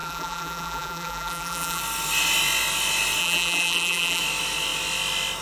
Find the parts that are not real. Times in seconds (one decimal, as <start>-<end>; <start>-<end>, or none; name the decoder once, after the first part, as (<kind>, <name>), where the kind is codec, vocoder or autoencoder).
0.0-1.8 (vocoder, BigVGAN v2); 3.2-4.2